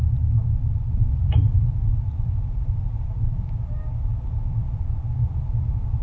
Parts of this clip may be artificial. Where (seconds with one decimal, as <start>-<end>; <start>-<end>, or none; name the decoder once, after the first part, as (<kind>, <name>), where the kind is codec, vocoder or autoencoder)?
1.1-1.7 (vocoder, Vocos)